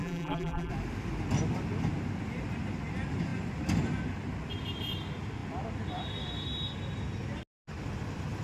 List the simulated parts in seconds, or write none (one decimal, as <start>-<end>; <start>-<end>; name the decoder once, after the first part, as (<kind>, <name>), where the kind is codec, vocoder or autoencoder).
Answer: 0.0-0.7 (vocoder, BigVGAN v2)

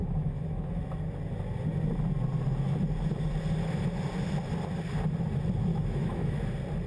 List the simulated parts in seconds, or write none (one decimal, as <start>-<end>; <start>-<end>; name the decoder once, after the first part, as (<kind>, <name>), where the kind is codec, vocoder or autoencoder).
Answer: 0.0-0.8 (autoencoder, DAC-VAE); 5.7-6.4